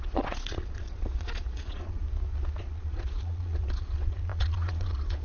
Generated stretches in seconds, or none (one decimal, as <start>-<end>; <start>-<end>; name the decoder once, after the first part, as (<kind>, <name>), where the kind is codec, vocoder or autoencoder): 0.0-2.0 (vocoder, Vocos); 2.6-5.2